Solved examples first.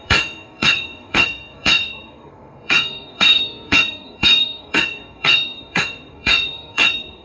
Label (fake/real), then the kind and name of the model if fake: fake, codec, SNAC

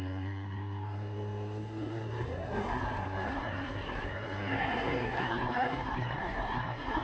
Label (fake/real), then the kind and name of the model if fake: fake, codec, SNAC